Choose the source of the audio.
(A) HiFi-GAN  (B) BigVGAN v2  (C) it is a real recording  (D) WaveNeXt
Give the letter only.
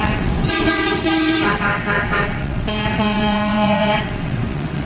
D